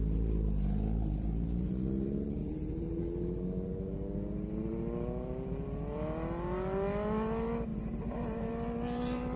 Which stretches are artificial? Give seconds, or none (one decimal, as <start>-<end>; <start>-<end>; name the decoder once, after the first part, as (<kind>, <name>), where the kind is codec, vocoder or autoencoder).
2.4-3.0 (vocoder, BigVGAN v2); 7.7-8.5